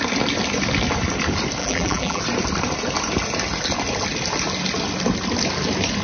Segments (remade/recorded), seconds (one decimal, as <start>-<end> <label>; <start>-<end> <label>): 0.0-1.6 recorded; 1.6-2.2 remade; 2.2-6.0 recorded